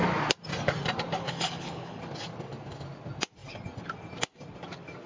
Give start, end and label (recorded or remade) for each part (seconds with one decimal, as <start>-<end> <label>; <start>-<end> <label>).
0.0-1.2 recorded; 1.2-2.0 remade; 2.0-5.1 recorded

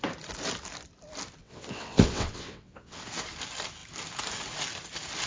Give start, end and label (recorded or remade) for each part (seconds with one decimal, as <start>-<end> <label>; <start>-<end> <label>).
0.0-1.4 recorded; 1.4-3.0 remade; 3.0-5.3 recorded

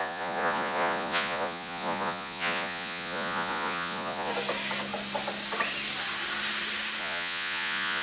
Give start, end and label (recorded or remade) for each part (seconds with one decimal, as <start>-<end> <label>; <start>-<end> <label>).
0.0-4.3 remade; 4.3-7.0 recorded; 7.0-8.0 remade

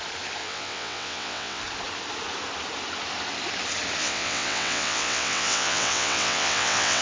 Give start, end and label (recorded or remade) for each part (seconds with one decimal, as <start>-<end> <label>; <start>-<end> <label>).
0.0-0.4 recorded; 0.4-1.6 remade; 1.6-4.0 recorded; 4.0-7.0 remade

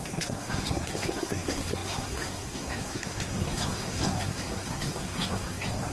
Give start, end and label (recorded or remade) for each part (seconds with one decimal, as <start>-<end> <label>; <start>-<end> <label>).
0.0-5.9 remade

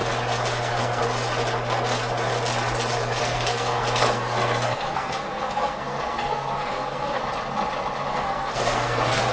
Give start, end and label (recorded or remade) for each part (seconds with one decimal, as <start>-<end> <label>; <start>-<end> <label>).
0.0-0.6 recorded; 0.6-1.0 remade; 1.0-3.2 recorded; 3.2-7.2 remade; 7.2-8.1 recorded; 8.1-9.3 remade